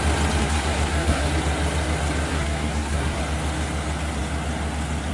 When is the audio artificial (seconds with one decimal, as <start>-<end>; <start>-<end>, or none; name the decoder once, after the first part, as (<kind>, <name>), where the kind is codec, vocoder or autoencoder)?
0.4-1.3 (codec, SNAC); 2.3-3.2